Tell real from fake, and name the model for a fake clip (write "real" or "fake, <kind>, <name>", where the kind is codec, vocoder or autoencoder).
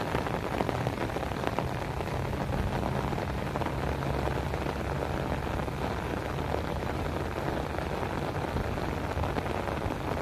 real